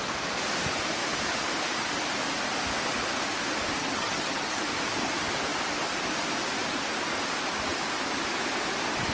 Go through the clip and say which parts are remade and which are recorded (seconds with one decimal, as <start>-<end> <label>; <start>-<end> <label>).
0.0-3.8 recorded; 3.8-4.6 remade; 4.6-9.1 recorded